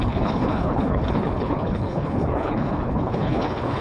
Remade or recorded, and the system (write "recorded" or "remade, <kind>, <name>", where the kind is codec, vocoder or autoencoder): remade, codec, HILCodec